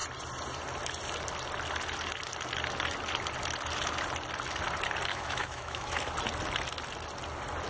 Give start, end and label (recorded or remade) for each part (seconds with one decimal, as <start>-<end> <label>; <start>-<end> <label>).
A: 0.0-5.1 recorded; 5.1-6.0 remade; 6.0-7.7 recorded